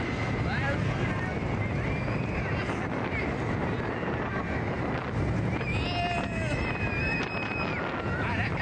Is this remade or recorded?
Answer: recorded